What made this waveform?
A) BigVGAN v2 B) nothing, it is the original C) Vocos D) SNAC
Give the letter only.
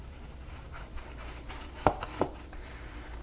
A